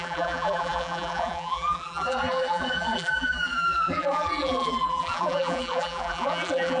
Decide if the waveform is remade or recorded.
remade